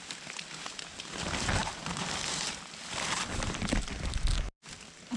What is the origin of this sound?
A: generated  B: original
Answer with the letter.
B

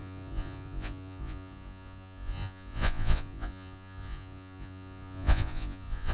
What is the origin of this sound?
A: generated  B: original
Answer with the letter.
A